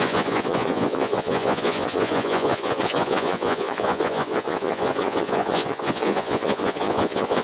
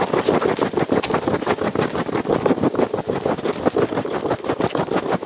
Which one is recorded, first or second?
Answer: second